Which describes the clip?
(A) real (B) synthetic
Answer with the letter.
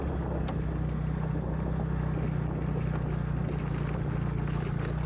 A